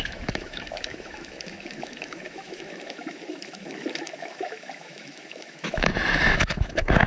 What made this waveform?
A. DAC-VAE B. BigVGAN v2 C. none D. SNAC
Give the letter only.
A